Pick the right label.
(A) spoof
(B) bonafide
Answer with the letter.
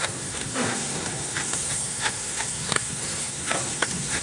A